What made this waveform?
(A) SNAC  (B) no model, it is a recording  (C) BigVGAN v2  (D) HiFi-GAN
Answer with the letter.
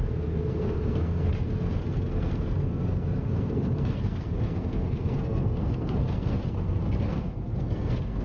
A